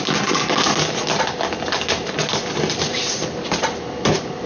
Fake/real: real